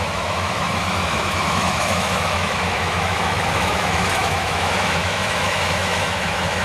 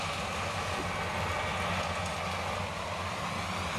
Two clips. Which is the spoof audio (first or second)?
first